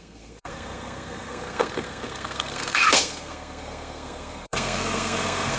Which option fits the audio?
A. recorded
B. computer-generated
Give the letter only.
B